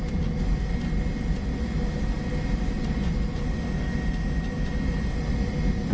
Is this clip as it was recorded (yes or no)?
yes